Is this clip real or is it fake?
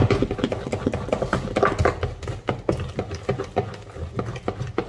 real